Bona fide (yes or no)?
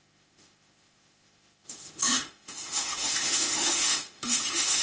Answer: no